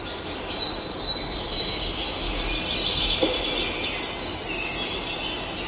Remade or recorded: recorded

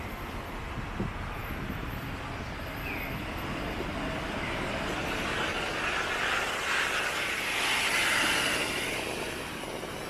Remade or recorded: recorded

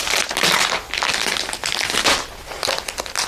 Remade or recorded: recorded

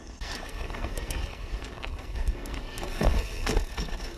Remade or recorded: remade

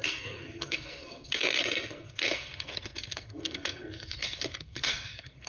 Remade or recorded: remade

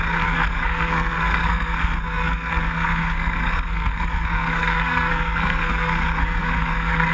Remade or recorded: remade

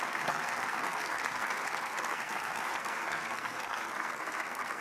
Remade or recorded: remade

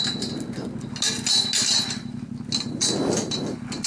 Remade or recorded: recorded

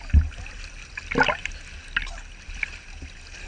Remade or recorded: recorded